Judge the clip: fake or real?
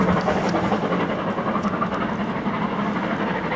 real